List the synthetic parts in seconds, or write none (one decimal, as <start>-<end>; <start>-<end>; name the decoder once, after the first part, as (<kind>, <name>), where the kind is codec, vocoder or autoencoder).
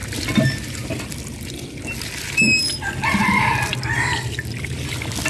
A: none